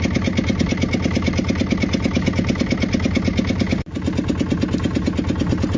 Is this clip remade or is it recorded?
recorded